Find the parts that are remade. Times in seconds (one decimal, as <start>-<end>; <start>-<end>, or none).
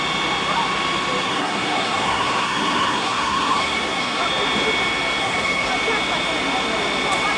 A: 1.2-4.2; 5.2-5.7